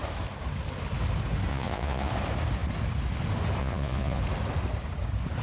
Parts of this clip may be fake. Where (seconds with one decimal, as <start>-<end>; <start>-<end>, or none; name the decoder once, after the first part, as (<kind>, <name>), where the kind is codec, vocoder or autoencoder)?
1.5-2.1 (vocoder, Vocos); 3.6-4.2